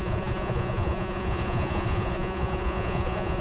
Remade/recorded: remade